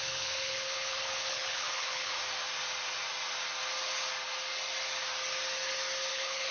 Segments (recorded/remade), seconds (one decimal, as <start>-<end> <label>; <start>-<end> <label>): 0.0-2.2 remade; 2.2-6.1 recorded; 6.1-6.5 remade